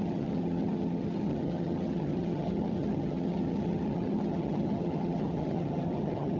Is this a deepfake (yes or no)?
yes